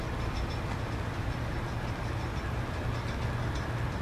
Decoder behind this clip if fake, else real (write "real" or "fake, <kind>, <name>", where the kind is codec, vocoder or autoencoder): real